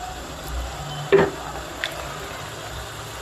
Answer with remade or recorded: recorded